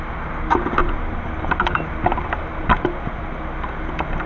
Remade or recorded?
recorded